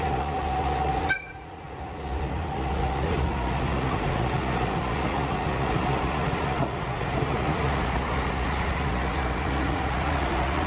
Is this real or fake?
fake